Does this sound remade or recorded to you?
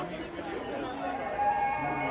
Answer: recorded